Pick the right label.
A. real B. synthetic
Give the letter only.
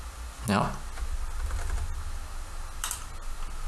A